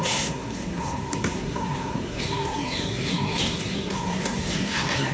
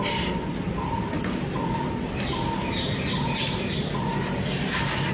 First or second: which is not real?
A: first